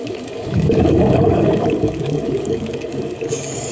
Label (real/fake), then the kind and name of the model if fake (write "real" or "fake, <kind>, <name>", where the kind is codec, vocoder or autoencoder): fake, codec, DAC